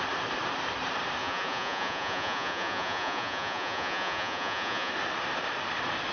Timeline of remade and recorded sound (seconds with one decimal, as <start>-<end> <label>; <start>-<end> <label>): 0.0-1.2 recorded; 1.2-4.9 remade; 4.9-6.1 recorded